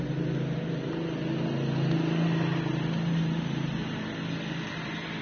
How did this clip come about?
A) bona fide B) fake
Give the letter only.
A